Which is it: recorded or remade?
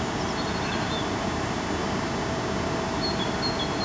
recorded